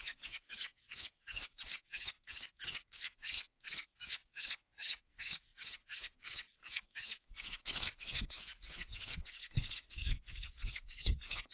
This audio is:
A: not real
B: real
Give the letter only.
A